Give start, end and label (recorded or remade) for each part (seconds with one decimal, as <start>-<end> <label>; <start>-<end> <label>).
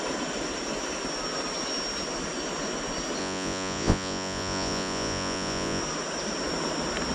0.0-3.2 recorded; 3.2-5.8 remade; 5.8-7.1 recorded